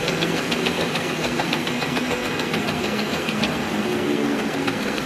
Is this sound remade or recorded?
remade